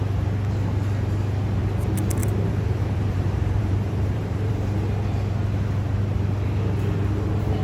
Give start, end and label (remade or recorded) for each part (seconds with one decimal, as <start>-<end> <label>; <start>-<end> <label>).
0.0-2.2 recorded; 2.2-4.5 remade; 4.5-7.6 recorded